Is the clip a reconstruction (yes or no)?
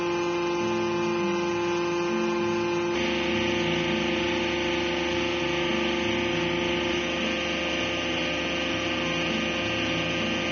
no